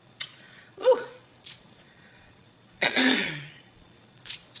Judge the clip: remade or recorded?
remade